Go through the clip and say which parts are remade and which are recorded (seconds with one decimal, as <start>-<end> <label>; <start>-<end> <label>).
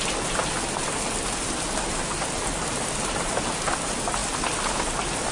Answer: 0.0-5.3 recorded